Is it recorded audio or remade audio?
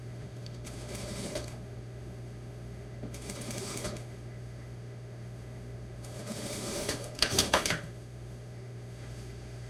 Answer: remade